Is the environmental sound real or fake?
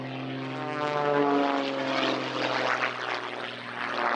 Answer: real